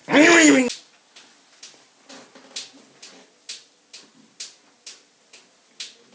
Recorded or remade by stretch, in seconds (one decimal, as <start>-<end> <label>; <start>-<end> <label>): 0.0-6.1 recorded